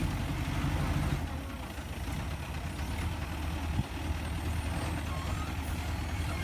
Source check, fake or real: real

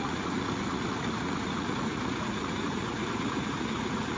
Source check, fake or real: fake